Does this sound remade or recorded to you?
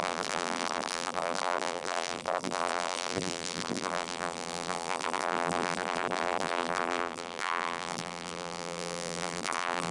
remade